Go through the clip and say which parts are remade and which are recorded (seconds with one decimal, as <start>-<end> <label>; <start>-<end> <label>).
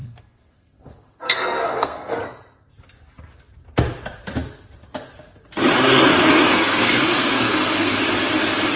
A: 0.0-2.2 remade; 2.2-6.5 recorded; 6.5-7.9 remade; 7.9-8.8 recorded